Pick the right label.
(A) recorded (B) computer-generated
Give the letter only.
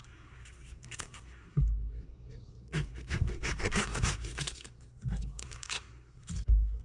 B